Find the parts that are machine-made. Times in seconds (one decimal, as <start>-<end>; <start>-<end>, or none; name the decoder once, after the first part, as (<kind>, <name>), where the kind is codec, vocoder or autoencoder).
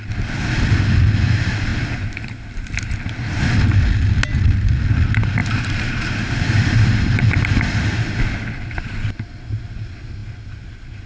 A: none